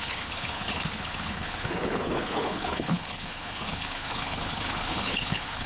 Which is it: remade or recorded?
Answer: remade